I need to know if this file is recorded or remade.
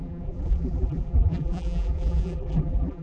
remade